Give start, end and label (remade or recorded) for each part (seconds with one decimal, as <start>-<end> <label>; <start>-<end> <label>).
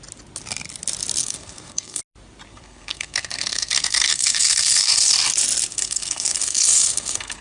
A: 0.0-1.2 recorded; 1.2-2.0 remade; 2.0-2.5 recorded; 2.5-5.1 remade; 5.1-5.7 recorded; 5.7-7.4 remade